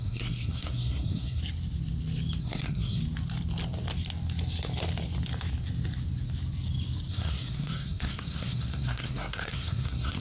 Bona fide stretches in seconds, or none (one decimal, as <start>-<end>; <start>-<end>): 1.4-2.4; 3.0-7.1